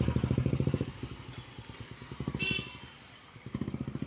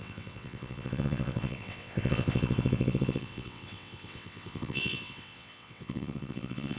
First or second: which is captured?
first